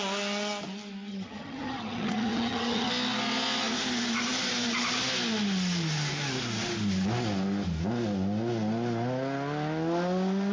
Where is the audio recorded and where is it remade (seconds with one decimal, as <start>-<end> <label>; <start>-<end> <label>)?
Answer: 0.0-1.1 recorded; 1.1-2.9 remade; 2.9-10.5 recorded